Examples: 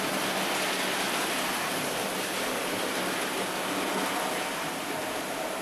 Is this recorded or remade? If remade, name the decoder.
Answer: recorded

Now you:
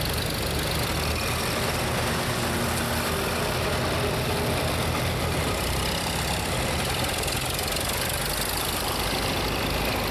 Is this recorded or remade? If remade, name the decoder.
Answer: recorded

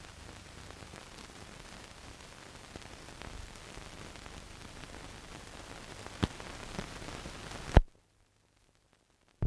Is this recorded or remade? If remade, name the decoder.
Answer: remade, vocoder, BigVGAN v2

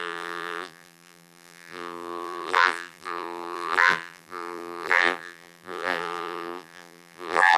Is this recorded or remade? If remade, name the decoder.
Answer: remade, vocoder, BigVGAN v2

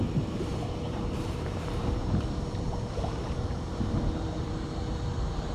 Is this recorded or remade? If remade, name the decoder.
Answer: remade, vocoder, BigVGAN v2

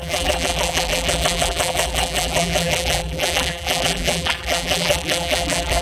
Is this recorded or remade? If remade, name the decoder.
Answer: remade, vocoder, BigVGAN v2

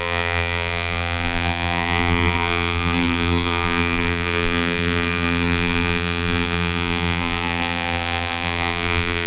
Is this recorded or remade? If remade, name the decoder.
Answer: remade, vocoder, BigVGAN v2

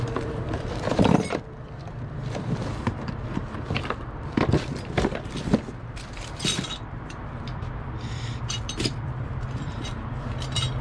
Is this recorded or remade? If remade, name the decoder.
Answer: remade, vocoder, BigVGAN v2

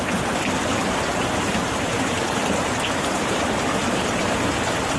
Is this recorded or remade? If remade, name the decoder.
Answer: remade, vocoder, BigVGAN v2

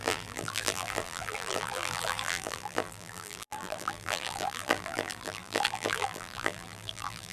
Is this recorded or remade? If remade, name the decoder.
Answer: remade, vocoder, BigVGAN v2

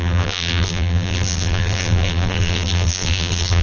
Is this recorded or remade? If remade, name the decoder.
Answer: remade, vocoder, BigVGAN v2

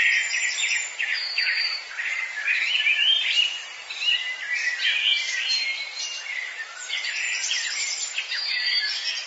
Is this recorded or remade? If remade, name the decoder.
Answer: remade, vocoder, BigVGAN v2